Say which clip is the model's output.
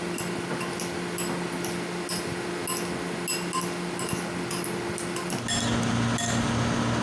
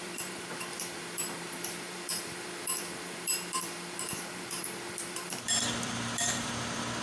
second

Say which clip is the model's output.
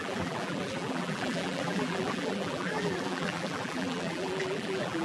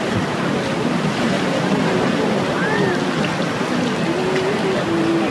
first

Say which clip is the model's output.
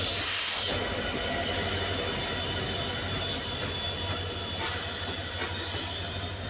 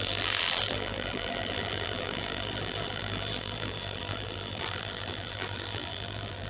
second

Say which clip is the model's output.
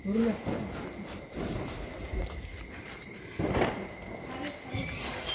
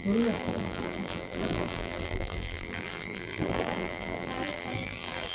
second